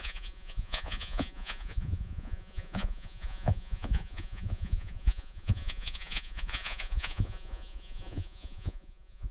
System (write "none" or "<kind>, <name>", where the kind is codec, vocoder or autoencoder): vocoder, Vocos